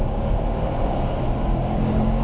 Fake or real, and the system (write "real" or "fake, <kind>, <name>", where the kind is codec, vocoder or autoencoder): fake, codec, DAC